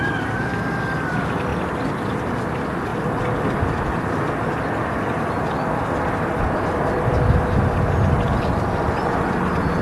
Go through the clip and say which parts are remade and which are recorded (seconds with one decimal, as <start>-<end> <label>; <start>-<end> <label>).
0.0-9.8 recorded